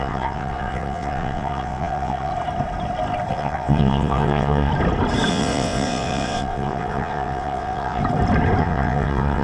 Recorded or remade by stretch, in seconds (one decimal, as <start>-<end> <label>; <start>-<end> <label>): 0.0-2.3 remade; 2.3-3.3 recorded; 3.3-4.7 remade; 4.7-5.3 recorded; 5.3-8.0 remade; 8.0-8.6 recorded; 8.6-9.4 remade